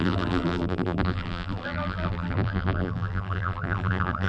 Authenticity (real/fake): fake